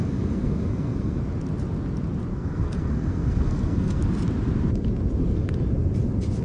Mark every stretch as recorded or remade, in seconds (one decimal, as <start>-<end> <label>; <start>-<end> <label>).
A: 0.0-1.2 remade; 1.2-2.3 recorded; 2.3-4.0 remade; 4.0-6.4 recorded